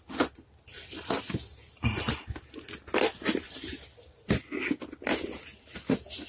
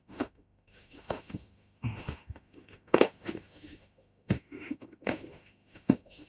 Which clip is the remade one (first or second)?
second